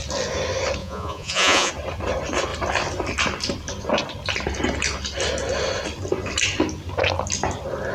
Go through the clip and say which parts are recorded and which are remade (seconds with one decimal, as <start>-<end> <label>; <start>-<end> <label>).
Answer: 0.0-0.8 recorded; 0.8-1.7 remade; 1.7-7.9 recorded

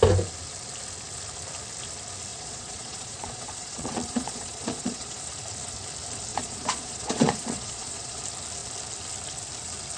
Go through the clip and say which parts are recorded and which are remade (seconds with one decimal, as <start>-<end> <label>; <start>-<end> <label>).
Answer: 0.0-2.3 recorded; 2.3-5.2 remade; 5.2-6.3 recorded; 6.3-8.2 remade; 8.2-10.0 recorded

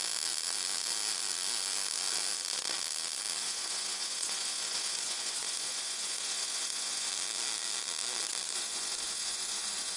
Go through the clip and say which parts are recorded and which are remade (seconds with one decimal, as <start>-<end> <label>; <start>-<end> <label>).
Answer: 0.0-3.4 recorded; 3.4-7.1 remade; 7.1-8.5 recorded; 8.5-10.0 remade

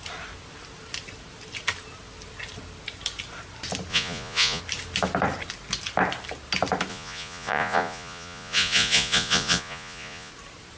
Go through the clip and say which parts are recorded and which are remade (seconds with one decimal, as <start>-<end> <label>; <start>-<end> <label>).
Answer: 0.0-3.9 recorded; 3.9-4.6 remade; 4.6-6.9 recorded; 6.9-10.3 remade; 10.3-10.8 recorded

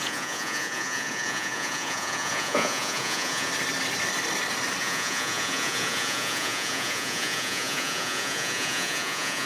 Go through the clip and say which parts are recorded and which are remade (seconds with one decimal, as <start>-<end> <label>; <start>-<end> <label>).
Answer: 0.0-3.5 remade; 3.5-4.8 recorded; 4.8-9.5 remade

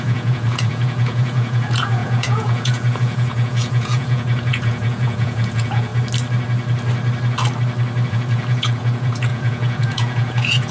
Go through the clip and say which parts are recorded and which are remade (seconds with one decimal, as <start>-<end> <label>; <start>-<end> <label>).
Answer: 0.0-5.9 remade; 5.9-8.1 recorded; 8.1-10.7 remade